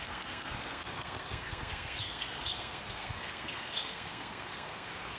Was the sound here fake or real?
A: fake